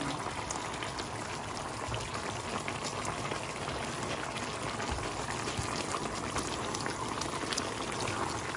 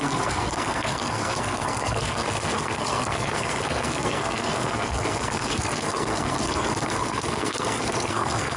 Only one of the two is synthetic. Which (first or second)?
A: second